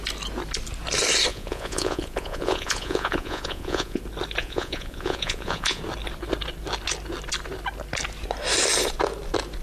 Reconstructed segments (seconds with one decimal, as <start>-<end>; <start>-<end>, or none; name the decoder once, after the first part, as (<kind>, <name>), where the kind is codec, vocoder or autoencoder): 1.3-4.0 (vocoder, Vocos); 4.4-5.8